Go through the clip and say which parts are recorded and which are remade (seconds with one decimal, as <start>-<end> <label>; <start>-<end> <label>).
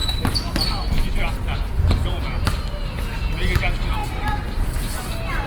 0.0-4.0 recorded; 4.0-5.0 remade; 5.0-5.5 recorded